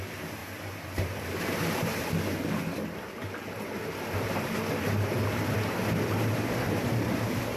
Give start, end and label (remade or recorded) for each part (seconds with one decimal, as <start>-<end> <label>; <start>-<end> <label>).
0.0-0.4 recorded; 0.4-2.1 remade; 2.1-7.6 recorded